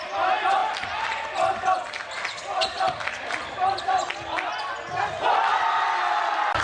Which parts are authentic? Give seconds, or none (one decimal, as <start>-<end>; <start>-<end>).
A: 0.0-6.6